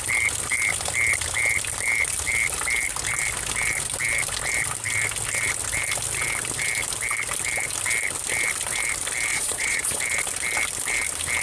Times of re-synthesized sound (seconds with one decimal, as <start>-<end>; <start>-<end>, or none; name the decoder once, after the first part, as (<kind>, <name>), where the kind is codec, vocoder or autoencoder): 9.3-10.0 (vocoder, Vocos)